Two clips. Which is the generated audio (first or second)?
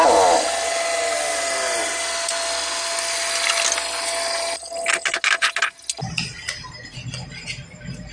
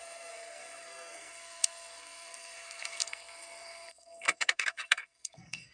second